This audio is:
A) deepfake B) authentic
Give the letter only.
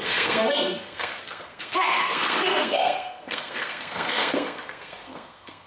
A